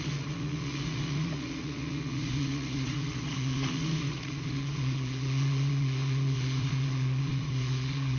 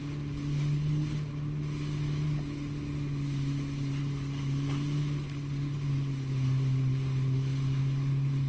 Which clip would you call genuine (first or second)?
second